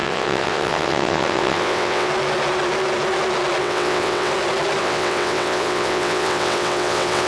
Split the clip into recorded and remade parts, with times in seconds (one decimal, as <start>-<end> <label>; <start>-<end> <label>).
0.0-2.1 remade; 2.1-3.6 recorded; 3.6-4.3 remade; 4.3-4.8 recorded; 4.8-7.3 remade